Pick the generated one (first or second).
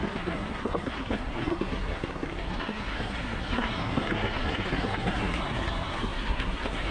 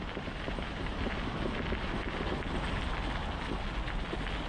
first